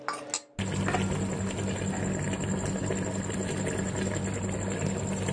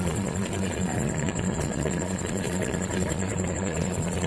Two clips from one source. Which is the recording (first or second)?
first